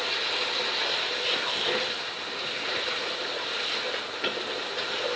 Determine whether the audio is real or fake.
real